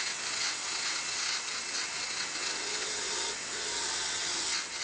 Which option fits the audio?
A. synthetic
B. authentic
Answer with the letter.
A